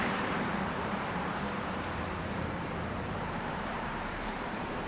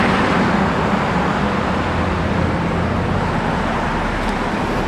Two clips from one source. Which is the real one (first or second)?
second